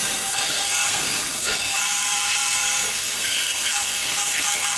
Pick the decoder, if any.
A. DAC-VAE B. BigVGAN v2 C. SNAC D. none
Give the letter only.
C